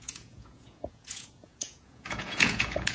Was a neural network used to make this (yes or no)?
yes